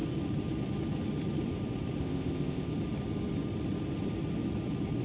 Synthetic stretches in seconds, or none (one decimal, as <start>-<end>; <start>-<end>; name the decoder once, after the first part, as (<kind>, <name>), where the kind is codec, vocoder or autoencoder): 2.0-2.7 (codec, ZipCodec)